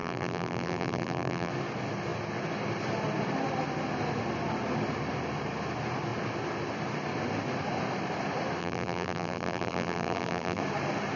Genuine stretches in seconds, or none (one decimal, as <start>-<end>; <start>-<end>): 1.5-8.6; 10.6-11.2